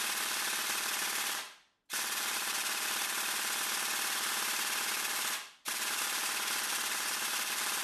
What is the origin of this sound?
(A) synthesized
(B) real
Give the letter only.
A